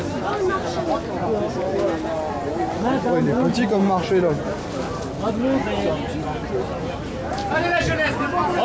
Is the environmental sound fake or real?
real